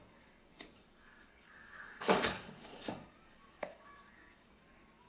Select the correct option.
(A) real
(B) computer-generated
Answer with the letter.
B